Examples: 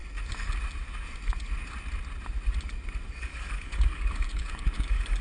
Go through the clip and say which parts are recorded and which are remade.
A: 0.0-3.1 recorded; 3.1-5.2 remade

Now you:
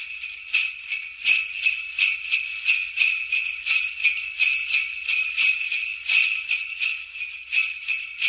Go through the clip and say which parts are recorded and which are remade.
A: 0.0-8.3 recorded

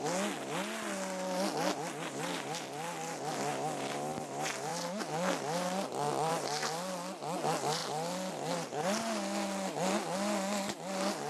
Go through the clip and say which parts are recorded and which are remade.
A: 0.0-11.3 recorded

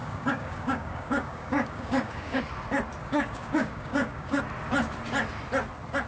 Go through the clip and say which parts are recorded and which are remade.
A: 0.0-2.4 remade; 2.4-3.0 recorded; 3.0-4.4 remade; 4.4-6.1 recorded

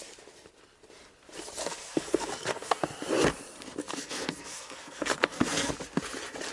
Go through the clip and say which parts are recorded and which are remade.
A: 0.0-1.6 recorded; 1.6-2.8 remade; 2.8-3.8 recorded; 3.8-5.7 remade; 5.7-6.5 recorded

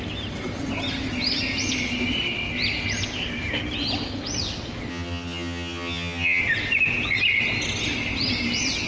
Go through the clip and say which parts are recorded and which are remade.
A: 0.0-4.9 recorded; 4.9-6.4 remade; 6.4-8.9 recorded

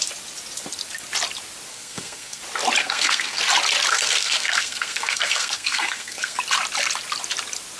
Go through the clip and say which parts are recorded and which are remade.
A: 0.0-1.7 recorded; 1.7-2.4 remade; 2.4-2.8 recorded; 2.8-3.4 remade; 3.4-3.9 recorded; 3.9-6.4 remade; 6.4-7.8 recorded

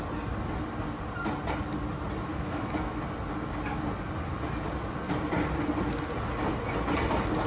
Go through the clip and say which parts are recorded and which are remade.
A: 0.0-2.3 recorded; 2.3-3.0 remade; 3.0-7.5 recorded